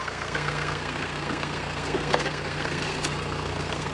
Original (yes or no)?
no